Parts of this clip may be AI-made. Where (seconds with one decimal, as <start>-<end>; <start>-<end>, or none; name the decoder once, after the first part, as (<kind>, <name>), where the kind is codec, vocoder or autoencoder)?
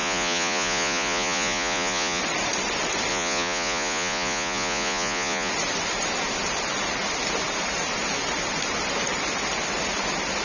0.0-2.2 (vocoder, Vocos); 3.1-5.5